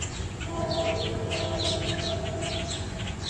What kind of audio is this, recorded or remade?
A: remade